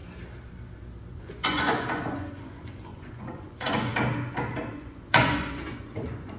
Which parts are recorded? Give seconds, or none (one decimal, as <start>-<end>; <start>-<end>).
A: 0.0-1.1; 3.9-4.7